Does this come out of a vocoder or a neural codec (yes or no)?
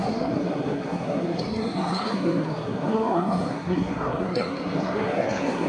yes